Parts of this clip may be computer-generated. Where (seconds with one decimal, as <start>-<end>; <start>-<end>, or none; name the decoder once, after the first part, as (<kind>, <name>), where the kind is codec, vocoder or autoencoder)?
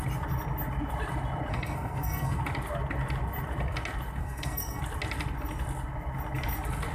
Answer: 1.5-2.4 (codec, SNAC); 4.2-4.8